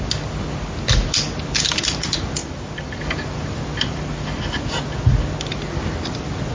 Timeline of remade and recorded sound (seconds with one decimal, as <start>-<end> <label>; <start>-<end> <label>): 0.0-2.4 recorded; 2.4-3.0 remade; 3.0-6.5 recorded